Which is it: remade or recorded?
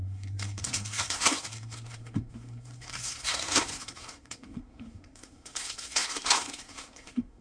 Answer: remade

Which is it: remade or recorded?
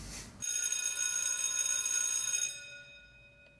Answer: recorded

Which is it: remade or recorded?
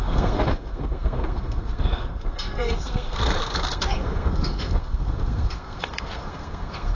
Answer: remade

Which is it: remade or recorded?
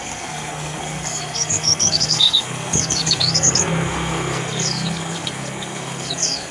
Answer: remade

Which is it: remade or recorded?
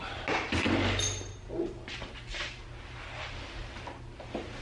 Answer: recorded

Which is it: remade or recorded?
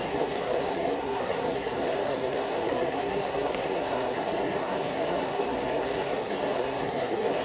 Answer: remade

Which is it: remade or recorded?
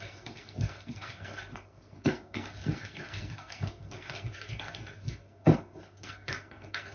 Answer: remade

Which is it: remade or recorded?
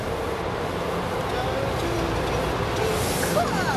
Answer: recorded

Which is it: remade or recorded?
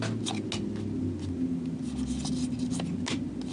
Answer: recorded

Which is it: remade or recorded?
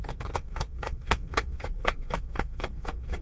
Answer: remade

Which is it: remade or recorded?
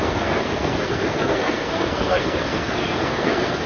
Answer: remade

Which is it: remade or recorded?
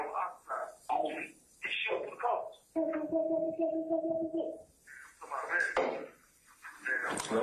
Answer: recorded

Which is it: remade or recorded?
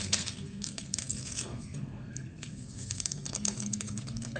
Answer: remade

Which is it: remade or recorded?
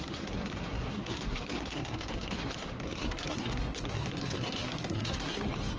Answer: remade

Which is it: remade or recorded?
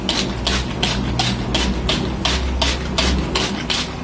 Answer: recorded